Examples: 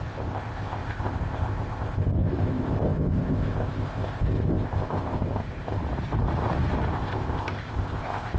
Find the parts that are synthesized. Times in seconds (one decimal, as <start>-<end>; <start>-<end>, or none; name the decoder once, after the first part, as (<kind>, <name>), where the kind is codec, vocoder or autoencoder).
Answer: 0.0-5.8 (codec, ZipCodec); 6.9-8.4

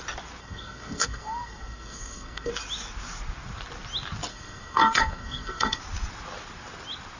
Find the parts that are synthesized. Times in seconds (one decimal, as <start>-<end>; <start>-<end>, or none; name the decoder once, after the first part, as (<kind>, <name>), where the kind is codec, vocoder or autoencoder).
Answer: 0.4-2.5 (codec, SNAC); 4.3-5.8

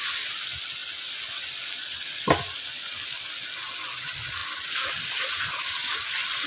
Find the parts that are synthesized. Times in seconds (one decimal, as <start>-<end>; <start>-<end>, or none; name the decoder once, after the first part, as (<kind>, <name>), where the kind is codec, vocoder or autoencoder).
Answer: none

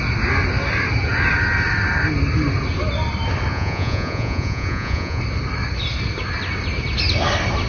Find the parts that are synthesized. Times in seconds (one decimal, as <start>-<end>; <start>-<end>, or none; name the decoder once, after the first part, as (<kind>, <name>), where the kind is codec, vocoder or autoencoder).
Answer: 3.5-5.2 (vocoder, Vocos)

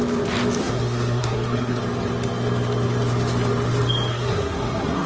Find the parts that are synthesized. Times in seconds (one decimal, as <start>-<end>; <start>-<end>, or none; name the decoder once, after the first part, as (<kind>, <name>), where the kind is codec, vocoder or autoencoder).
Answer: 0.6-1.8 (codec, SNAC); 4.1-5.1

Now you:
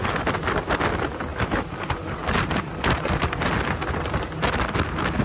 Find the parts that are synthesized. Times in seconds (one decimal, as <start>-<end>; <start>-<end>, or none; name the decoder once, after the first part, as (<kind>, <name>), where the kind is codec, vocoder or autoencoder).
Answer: 1.3-3.5 (vocoder, BigVGAN v2)

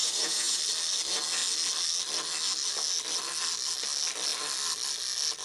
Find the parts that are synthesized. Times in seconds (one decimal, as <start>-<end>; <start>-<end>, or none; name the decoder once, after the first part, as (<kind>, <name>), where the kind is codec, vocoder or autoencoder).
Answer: 0.0-0.6 (vocoder, Vocos)

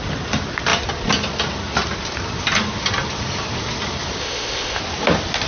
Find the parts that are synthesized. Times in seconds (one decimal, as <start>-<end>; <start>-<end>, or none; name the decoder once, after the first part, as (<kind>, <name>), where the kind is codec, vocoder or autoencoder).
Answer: 4.2-4.8 (codec, ZipCodec)